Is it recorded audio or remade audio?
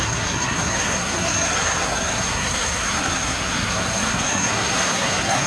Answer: remade